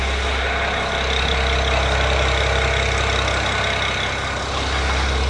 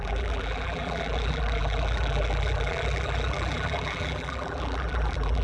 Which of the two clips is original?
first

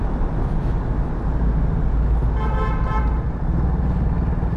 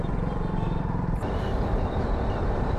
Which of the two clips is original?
first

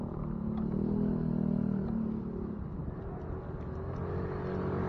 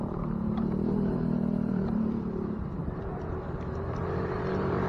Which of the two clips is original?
first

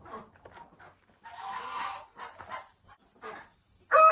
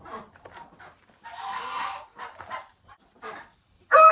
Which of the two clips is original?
first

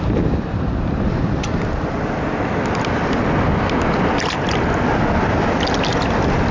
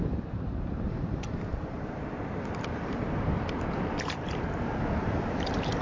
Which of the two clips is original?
first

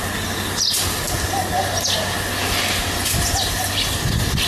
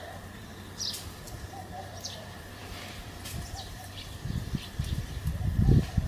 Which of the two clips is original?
first